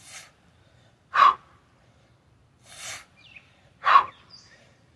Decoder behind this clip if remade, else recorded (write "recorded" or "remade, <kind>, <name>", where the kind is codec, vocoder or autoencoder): remade, vocoder, BigVGAN v2